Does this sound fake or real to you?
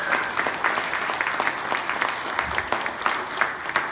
real